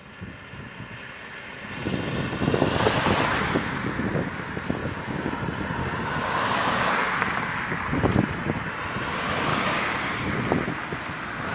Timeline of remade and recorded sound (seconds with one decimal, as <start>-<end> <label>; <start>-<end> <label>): 0.0-4.8 recorded; 4.8-5.3 remade; 5.3-5.8 recorded; 5.8-7.0 remade; 7.0-9.5 recorded; 9.5-10.4 remade; 10.4-11.5 recorded